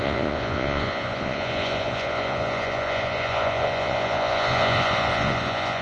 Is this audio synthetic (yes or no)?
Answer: yes